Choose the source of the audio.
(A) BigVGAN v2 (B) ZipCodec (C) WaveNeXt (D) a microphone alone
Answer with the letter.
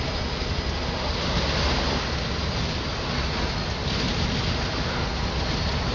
D